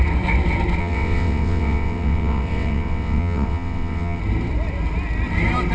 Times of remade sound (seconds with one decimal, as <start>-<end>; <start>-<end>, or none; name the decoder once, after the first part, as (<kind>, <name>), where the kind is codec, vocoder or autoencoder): 0.8-4.2 (vocoder, WaveNeXt)